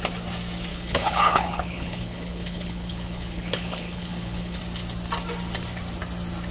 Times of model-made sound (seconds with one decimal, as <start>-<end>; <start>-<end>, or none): 0.7-4.6